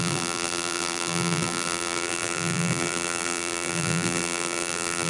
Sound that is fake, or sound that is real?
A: fake